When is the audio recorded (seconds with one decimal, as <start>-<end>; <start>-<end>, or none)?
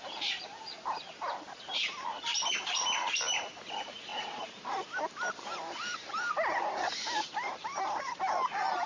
none